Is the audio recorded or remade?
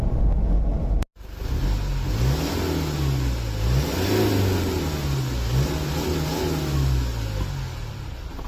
recorded